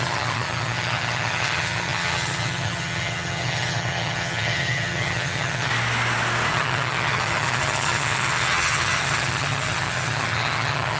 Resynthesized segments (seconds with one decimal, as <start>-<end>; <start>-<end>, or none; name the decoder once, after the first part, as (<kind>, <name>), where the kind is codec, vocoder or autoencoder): 0.0-5.7 (vocoder, HiFi-GAN); 6.5-11.0